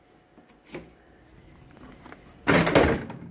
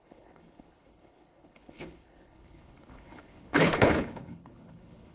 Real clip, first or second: first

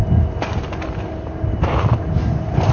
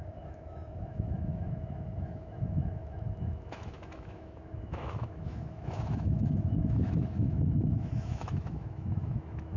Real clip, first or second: first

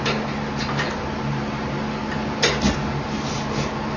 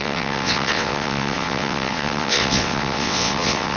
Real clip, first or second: first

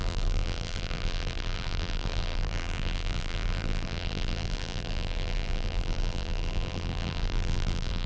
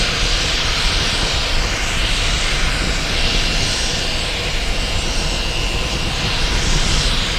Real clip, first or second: second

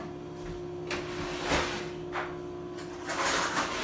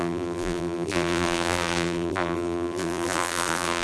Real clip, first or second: first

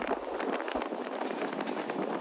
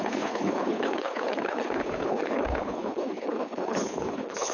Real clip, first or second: first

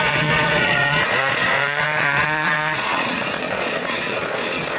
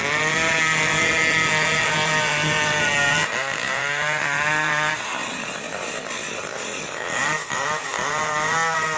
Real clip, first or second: second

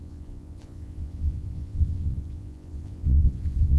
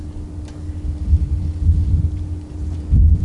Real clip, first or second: second